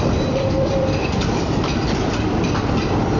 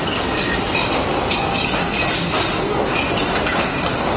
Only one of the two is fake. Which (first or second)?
first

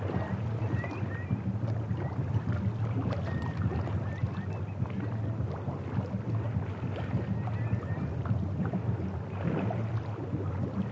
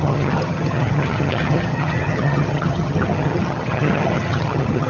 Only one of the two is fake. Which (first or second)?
second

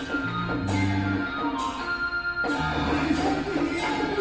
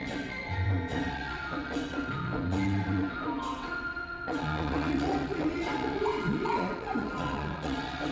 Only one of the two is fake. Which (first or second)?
second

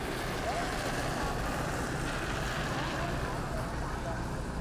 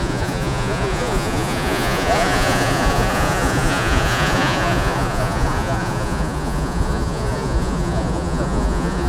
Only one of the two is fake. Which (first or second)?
second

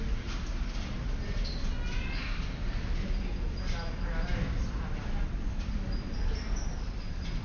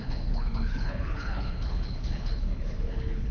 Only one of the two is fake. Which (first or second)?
second